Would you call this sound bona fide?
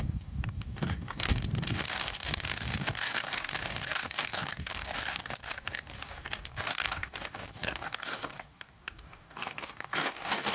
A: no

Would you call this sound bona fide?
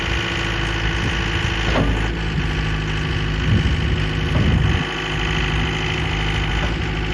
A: yes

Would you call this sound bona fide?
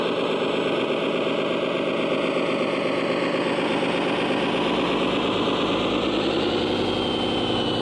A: yes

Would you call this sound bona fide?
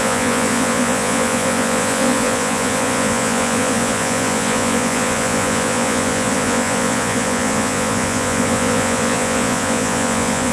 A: no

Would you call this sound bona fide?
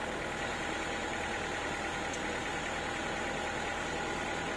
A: yes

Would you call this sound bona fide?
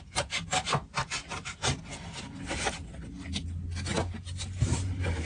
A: yes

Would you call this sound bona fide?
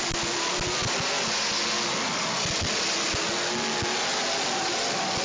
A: yes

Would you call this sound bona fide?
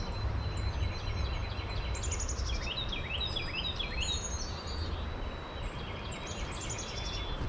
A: yes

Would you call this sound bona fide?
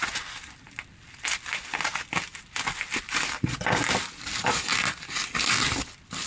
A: yes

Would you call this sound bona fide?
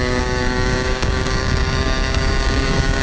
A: no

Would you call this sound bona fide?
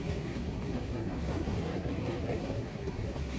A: no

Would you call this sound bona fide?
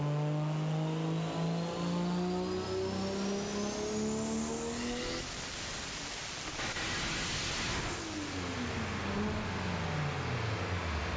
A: yes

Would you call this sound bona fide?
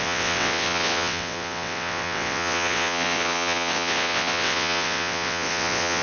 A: no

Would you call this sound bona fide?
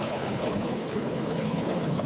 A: no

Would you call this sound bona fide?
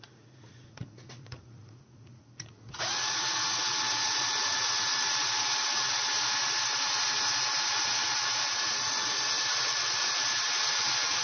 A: no